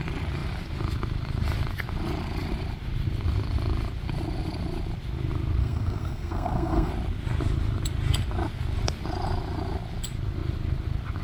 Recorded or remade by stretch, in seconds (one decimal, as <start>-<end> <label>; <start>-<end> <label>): 0.0-5.6 recorded; 5.6-6.9 remade; 6.9-11.2 recorded